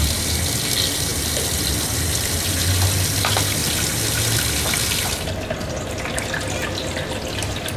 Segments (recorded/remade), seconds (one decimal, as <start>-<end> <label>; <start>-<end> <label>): 0.0-7.8 recorded